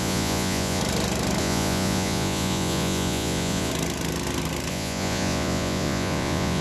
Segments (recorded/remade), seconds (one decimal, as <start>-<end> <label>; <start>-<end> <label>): 0.0-0.8 remade; 0.8-1.4 recorded; 1.4-3.7 remade; 3.7-4.7 recorded; 4.7-6.6 remade